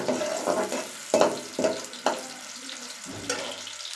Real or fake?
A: real